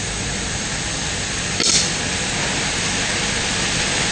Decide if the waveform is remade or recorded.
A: recorded